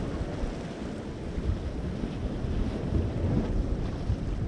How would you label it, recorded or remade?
recorded